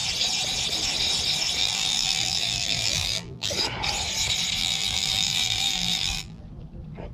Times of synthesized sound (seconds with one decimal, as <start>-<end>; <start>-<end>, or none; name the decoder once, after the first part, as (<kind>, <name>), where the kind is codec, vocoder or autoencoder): 1.6-3.5 (vocoder, BigVGAN v2); 4.6-6.4